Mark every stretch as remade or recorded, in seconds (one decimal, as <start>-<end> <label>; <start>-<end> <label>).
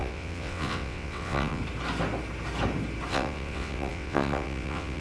0.0-1.6 remade; 1.6-3.1 recorded; 3.1-5.0 remade